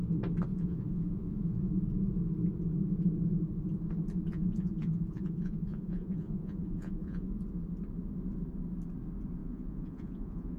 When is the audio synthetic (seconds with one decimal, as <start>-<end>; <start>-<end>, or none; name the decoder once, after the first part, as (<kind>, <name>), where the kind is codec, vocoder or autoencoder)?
0.5-1.7 (vocoder, Vocos); 4.3-7.3; 9.4-10.6